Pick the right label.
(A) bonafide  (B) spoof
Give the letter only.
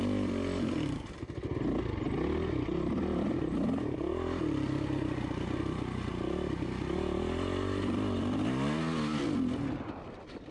A